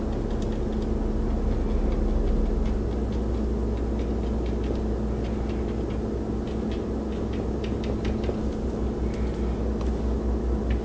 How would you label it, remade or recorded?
recorded